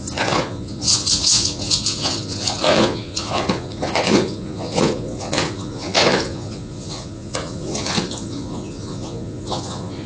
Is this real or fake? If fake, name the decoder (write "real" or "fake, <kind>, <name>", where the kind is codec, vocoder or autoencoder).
fake, vocoder, Vocos